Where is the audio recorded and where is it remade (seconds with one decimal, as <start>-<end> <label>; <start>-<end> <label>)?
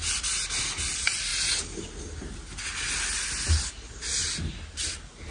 0.0-5.3 recorded